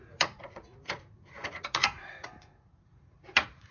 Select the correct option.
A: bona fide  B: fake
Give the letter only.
B